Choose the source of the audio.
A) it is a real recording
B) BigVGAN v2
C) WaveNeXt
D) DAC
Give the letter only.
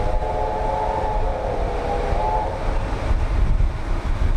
A